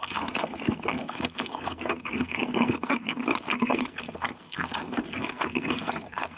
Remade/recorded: remade